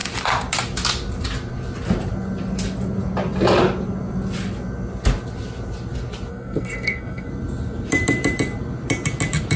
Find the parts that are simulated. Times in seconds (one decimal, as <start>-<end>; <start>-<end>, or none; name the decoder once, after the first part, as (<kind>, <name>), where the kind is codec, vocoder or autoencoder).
6.3-7.3 (codec, SNAC)